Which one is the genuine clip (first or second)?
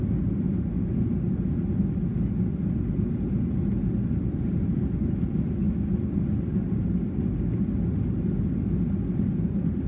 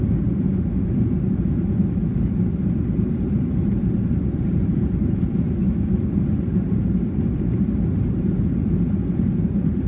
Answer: first